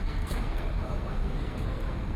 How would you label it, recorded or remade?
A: remade